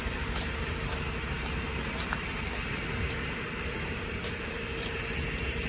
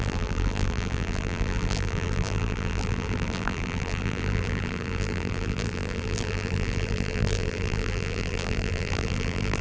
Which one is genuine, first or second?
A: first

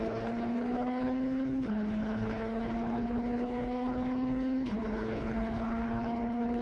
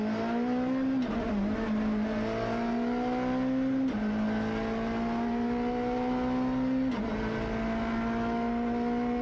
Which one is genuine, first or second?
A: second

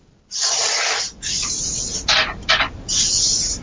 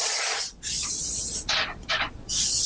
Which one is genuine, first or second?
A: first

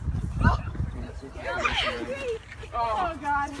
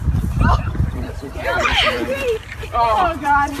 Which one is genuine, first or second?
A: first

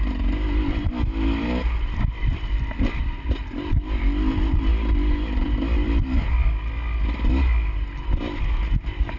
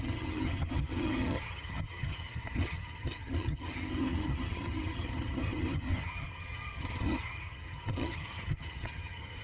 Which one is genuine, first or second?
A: first